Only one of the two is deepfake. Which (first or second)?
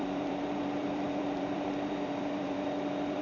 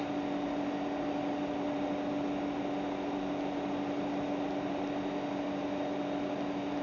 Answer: first